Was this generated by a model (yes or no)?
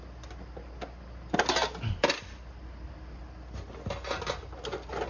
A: no